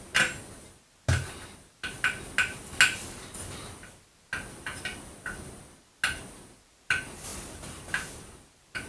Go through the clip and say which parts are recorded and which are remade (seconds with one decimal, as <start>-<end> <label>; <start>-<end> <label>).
0.0-8.9 recorded